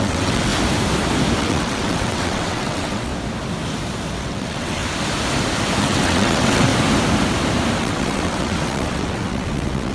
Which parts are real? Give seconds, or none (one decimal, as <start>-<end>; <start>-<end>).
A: 0.5-1.4; 3.1-4.2; 4.8-5.8; 6.7-7.8